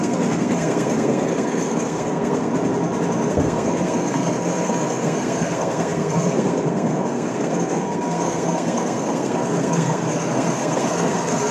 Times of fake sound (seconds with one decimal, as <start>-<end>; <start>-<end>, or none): 0.0-2.5; 3.3-11.5